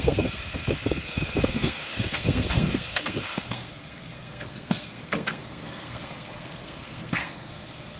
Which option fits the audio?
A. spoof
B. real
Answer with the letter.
A